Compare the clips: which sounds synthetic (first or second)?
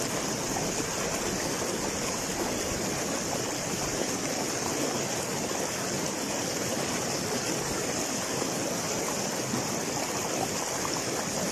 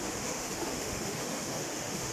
second